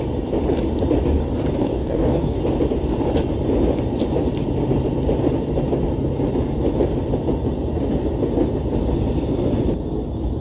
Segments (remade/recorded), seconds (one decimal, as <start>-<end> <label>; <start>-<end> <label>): 0.0-1.6 recorded; 1.6-2.4 remade; 2.4-10.4 recorded